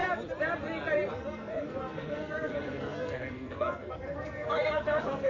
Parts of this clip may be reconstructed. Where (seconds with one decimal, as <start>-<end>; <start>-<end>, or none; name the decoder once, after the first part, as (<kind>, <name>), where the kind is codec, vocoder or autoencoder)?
1.1-5.3 (codec, SNAC)